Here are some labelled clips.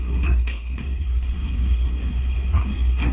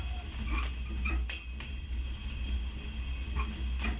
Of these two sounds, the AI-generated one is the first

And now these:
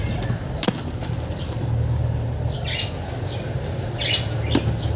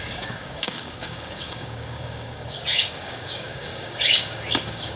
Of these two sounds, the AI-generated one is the second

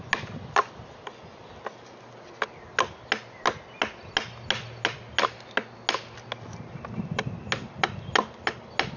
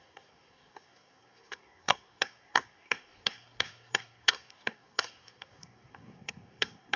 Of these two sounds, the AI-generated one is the second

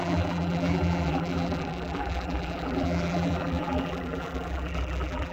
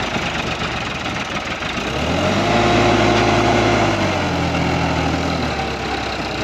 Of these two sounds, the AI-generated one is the first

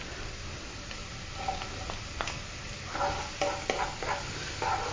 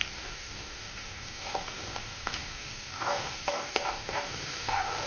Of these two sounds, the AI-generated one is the second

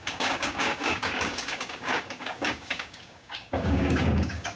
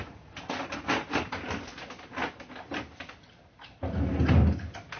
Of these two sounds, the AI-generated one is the first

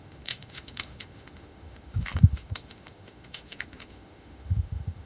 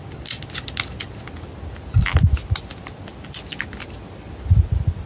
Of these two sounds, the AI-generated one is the first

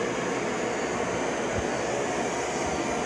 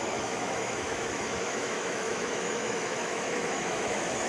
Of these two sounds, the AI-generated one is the second